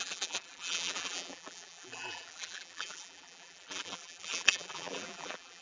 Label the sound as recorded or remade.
remade